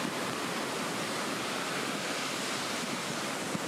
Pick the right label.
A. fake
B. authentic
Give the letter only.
B